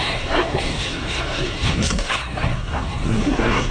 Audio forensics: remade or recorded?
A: remade